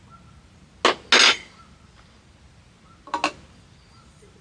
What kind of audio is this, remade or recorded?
recorded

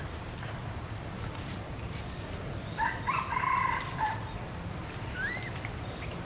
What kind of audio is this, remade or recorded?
remade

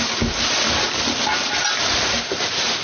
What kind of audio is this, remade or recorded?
recorded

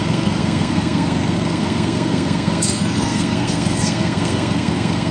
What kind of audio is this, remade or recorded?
remade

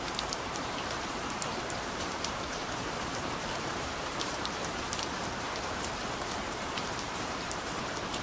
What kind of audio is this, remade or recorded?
remade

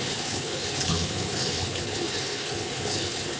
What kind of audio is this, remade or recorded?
remade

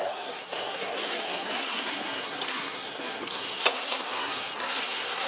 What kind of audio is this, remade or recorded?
remade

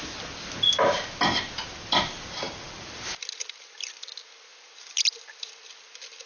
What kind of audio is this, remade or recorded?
recorded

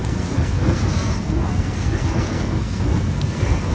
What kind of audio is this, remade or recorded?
remade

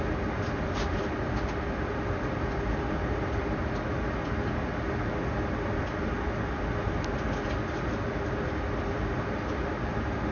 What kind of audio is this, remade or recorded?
recorded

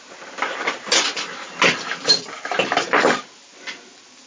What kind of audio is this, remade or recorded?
recorded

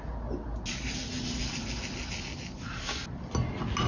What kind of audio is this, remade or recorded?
recorded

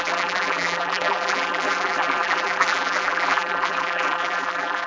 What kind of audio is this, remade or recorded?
remade